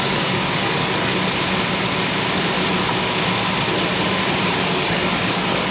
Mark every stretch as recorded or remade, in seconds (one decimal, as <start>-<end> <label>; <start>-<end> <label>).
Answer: 0.0-1.1 remade; 1.1-4.5 recorded; 4.5-5.7 remade